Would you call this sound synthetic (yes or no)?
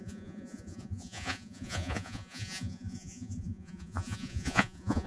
yes